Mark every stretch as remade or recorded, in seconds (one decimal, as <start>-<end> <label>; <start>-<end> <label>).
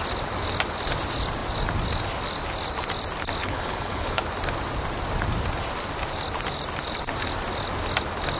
0.0-3.4 recorded; 3.4-4.2 remade; 4.2-8.4 recorded